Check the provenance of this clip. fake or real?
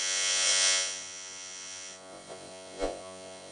fake